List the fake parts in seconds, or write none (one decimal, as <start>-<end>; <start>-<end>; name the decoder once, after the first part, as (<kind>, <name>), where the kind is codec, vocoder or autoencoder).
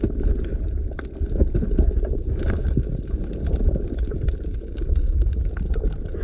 4.6-5.5 (codec, DAC)